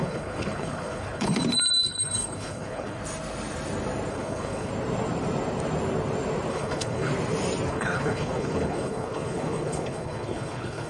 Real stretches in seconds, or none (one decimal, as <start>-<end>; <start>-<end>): 1.3-1.8; 3.0-4.1; 4.7-6.5; 7.1-7.7